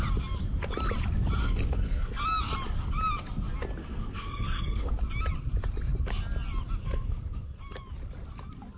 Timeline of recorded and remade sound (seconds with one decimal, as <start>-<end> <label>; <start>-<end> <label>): 0.0-1.4 recorded; 1.4-2.2 remade; 2.2-3.8 recorded; 3.8-4.9 remade; 4.9-6.8 recorded; 6.8-7.6 remade; 7.6-8.8 recorded